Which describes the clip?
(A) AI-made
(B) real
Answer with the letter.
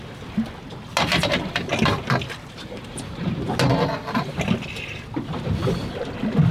B